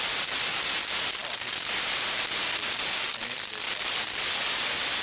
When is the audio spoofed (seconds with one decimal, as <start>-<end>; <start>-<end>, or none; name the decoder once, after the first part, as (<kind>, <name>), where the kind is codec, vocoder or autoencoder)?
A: none